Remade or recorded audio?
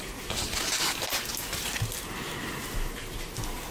recorded